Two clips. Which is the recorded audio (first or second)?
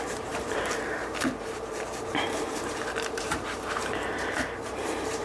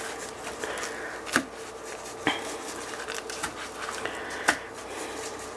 second